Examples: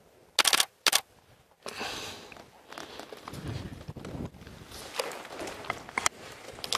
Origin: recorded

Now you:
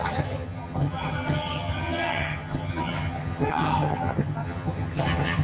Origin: remade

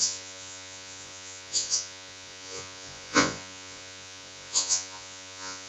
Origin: remade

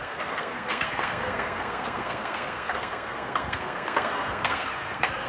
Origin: remade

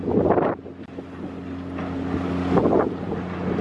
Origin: recorded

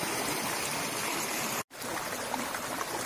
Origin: recorded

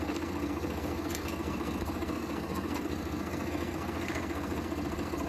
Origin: remade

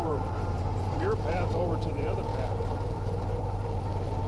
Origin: remade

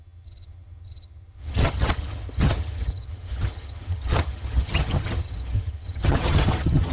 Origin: remade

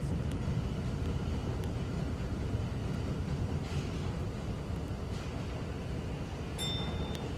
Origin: recorded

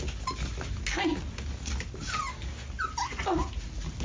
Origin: recorded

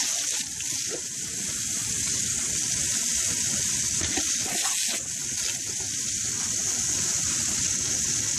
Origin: recorded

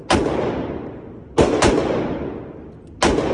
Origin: recorded